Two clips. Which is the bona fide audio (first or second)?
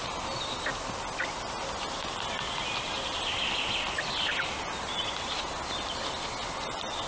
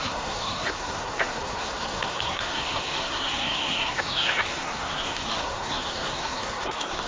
first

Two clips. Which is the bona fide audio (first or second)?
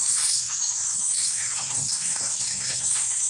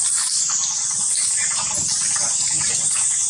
second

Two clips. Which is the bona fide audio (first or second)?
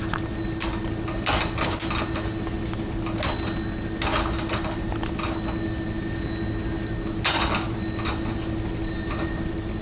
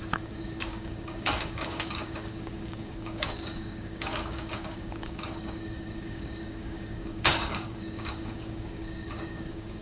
first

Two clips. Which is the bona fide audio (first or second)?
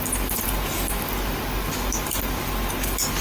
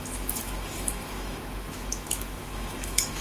first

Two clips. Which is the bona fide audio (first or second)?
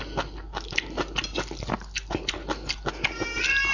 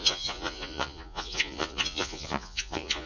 first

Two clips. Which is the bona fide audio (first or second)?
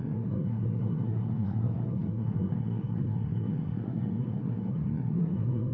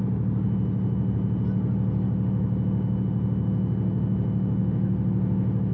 second